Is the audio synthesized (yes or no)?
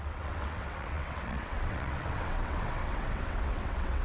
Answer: yes